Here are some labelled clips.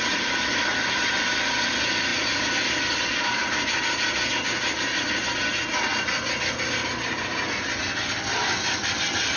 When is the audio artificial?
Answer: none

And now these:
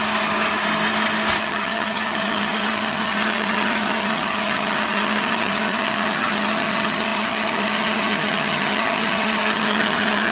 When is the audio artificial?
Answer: 1.4-10.3 (vocoder, HiFi-GAN)